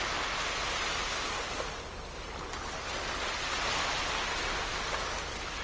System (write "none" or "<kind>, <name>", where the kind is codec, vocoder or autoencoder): none